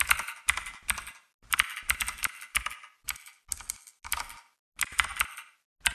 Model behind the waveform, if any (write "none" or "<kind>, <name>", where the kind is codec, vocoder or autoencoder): none